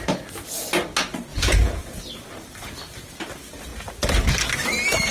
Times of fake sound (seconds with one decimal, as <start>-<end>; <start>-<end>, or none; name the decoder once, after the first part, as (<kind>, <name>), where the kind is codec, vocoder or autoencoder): 1.3-1.8 (vocoder, Vocos)